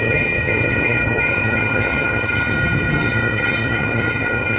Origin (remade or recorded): remade